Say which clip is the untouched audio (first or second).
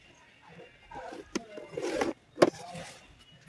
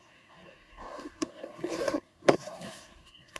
first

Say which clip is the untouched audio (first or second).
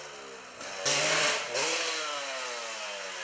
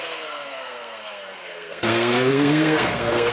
first